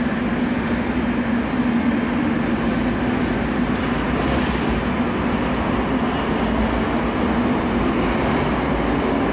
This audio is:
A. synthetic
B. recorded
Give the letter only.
B